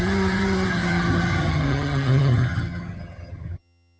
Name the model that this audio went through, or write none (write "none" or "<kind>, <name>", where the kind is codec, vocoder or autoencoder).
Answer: vocoder, HiFi-GAN